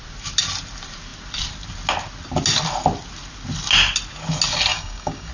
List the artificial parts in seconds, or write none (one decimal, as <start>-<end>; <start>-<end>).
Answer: 4.7-5.3

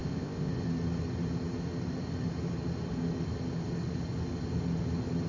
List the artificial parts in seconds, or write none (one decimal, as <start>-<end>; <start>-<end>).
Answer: 0.0-0.5

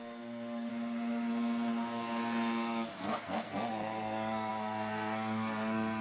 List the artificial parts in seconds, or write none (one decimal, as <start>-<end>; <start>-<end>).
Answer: 0.0-0.7; 3.0-6.0

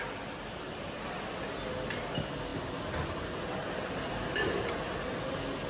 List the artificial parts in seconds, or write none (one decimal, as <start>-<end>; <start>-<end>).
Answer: none